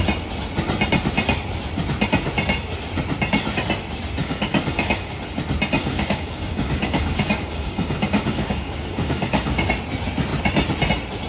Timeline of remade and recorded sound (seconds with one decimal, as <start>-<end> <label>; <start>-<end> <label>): 0.0-4.2 recorded; 4.2-5.1 remade; 5.1-5.8 recorded; 5.8-9.7 remade; 9.7-11.3 recorded